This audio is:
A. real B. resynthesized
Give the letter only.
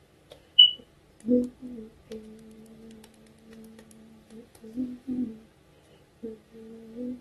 A